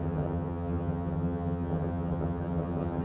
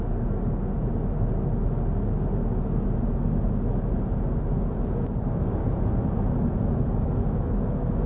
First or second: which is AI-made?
first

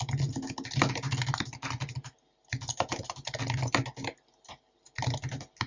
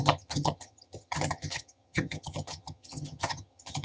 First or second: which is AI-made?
second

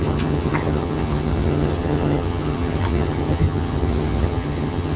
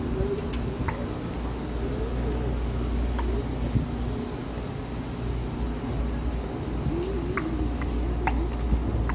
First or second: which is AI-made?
first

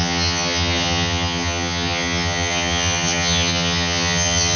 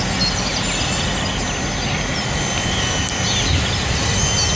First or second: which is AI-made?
first